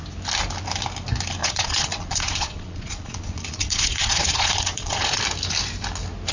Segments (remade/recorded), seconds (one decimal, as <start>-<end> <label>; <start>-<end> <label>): 0.0-1.4 recorded; 1.4-5.2 remade; 5.2-6.3 recorded